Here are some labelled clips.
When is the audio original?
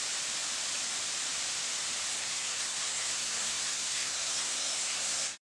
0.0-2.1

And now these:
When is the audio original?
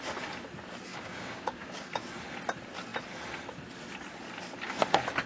0.0-0.9; 2.0-5.3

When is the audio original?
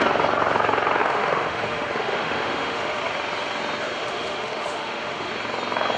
0.0-1.0; 3.0-4.0; 5.3-6.0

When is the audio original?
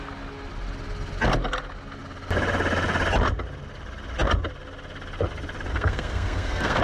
0.0-5.7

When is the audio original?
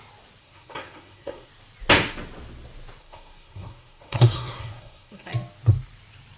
0.0-0.4; 1.5-3.0; 5.3-6.4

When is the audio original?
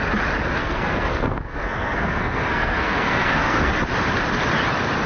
0.0-0.6; 3.7-5.1